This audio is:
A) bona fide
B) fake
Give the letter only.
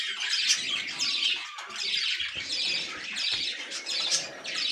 A